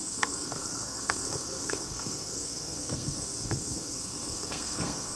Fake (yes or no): yes